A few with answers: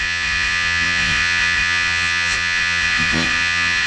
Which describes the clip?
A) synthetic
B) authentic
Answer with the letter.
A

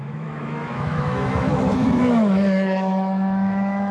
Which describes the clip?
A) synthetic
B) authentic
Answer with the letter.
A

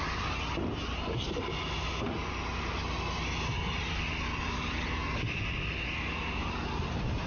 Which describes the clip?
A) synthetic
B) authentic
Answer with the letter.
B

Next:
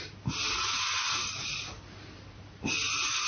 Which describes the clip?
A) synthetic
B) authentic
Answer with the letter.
B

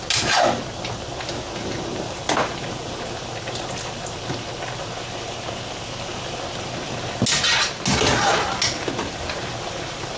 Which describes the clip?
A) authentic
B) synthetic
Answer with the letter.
A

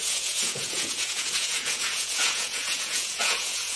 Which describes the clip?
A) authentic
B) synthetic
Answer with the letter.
B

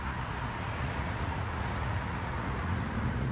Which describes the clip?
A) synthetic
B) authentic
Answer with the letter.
A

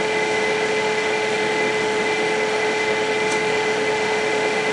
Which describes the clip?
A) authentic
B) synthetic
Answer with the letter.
B